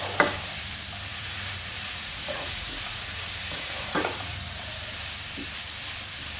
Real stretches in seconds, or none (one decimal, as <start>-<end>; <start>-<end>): 0.0-1.1; 4.9-6.4